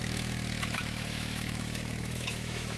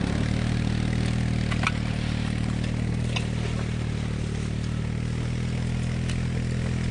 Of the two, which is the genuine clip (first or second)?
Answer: second